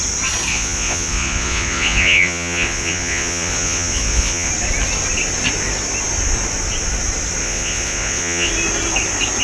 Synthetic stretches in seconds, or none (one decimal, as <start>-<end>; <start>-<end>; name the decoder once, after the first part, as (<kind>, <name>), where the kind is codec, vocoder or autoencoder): 0.5-4.5 (vocoder, Vocos); 7.4-8.5